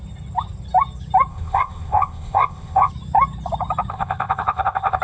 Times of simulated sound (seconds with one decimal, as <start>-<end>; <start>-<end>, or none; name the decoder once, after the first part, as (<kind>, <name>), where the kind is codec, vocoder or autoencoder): 1.3-2.9 (codec, ZipCodec); 3.9-5.0